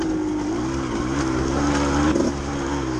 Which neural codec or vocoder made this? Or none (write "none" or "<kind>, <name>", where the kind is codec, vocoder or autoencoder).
none